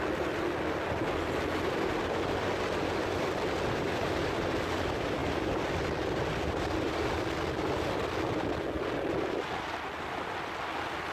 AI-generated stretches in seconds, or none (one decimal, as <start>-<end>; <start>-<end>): none